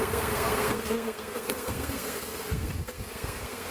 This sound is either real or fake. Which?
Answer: fake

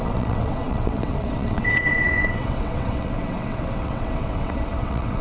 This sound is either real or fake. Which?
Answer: fake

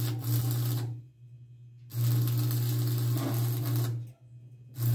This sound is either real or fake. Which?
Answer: real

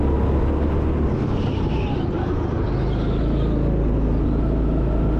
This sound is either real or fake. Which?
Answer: real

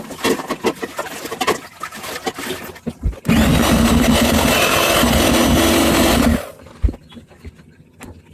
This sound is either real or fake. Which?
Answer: real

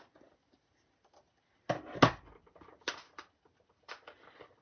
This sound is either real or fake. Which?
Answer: real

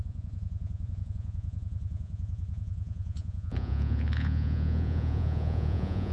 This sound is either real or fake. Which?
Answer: fake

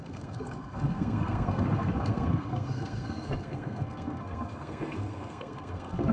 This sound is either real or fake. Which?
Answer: fake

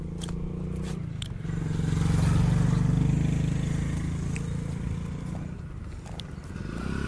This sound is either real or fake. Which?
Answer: real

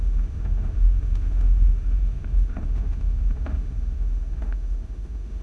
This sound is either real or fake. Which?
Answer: fake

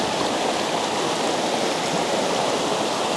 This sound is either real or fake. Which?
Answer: real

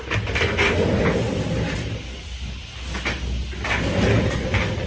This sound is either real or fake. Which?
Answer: real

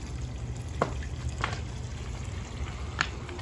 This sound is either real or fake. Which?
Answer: real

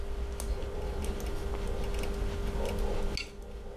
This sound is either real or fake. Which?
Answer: real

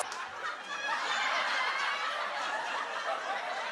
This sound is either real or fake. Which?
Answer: real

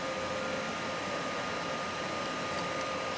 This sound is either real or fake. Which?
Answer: real